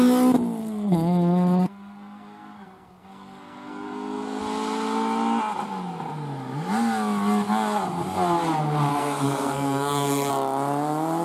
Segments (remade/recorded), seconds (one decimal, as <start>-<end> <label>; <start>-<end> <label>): 0.0-0.6 recorded; 0.6-4.4 remade; 4.4-8.9 recorded; 8.9-10.3 remade; 10.3-11.2 recorded